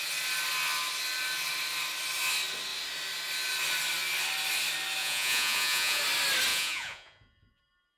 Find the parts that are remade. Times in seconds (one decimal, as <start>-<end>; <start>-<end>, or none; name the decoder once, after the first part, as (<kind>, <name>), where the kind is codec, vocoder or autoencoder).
5.0-6.0 (vocoder, Vocos); 6.5-7.6